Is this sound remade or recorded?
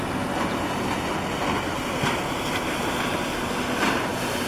recorded